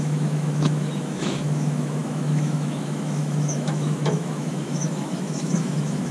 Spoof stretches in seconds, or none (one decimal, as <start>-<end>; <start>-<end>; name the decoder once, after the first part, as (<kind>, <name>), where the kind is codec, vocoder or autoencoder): 0.0-6.1 (autoencoder, DAC-VAE)